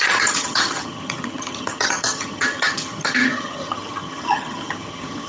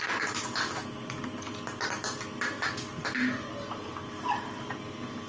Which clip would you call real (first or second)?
second